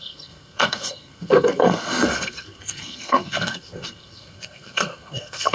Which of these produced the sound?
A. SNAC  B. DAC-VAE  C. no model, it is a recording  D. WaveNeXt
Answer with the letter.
A